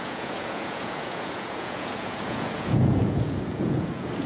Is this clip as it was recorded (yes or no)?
no